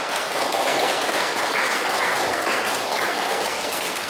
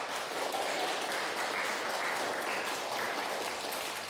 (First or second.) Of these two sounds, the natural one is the second